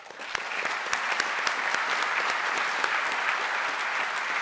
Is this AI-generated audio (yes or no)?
no